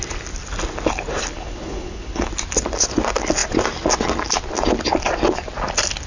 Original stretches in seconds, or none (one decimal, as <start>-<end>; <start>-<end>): 0.0-1.3; 2.3-6.1